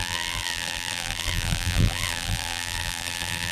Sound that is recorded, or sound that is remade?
remade